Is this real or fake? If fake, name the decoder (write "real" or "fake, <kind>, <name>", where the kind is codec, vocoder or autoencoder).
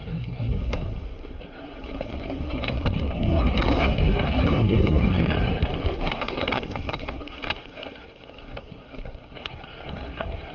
fake, codec, SNAC